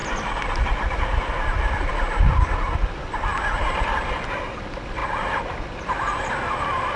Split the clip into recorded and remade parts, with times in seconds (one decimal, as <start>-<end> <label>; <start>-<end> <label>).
0.0-7.0 recorded